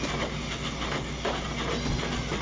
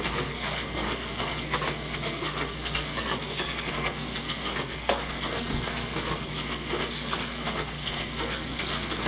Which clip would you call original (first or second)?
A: first